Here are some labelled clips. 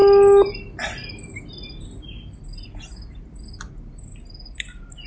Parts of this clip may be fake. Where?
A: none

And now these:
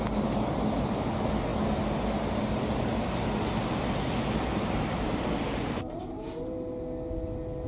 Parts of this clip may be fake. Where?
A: none